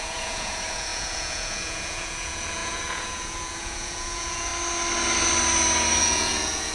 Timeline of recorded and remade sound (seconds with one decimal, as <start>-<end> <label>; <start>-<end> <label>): 0.0-4.5 remade; 4.5-6.0 recorded; 6.0-6.7 remade